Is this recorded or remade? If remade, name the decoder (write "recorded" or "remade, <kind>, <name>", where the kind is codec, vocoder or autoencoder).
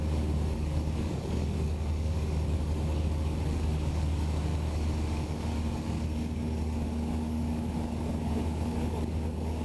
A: remade, codec, DAC